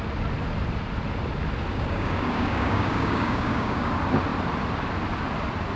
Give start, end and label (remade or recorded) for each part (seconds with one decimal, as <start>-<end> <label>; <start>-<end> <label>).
0.0-1.7 recorded; 1.7-3.9 remade; 3.9-5.8 recorded